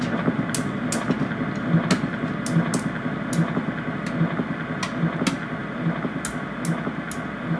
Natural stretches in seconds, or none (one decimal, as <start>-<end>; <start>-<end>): 0.0-7.6